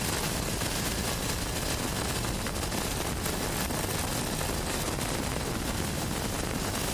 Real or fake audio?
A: real